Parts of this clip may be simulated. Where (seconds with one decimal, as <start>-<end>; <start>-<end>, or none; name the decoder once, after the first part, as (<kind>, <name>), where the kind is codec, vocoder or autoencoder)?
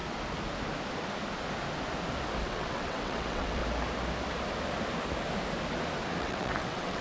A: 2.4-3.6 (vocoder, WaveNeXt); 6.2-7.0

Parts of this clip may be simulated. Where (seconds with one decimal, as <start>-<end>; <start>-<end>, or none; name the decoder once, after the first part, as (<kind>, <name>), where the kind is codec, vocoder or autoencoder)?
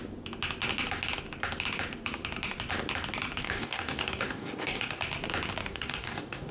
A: 3.4-5.0 (codec, DAC); 5.6-6.5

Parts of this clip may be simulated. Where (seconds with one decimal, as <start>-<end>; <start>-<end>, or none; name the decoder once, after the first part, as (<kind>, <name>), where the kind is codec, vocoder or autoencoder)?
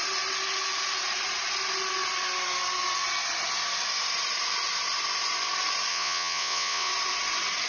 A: 5.9-6.9 (vocoder, WaveNeXt)